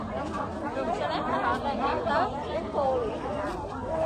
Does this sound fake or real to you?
real